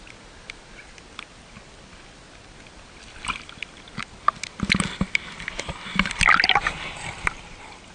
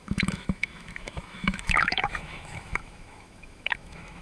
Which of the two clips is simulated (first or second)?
second